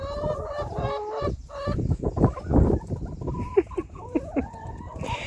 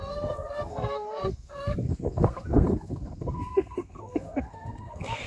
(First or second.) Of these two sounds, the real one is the first